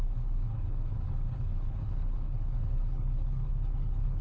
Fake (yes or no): yes